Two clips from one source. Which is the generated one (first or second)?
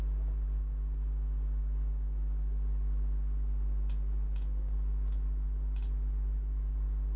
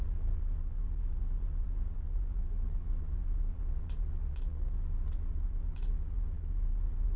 second